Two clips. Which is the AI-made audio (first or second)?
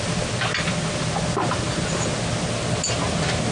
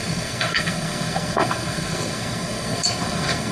second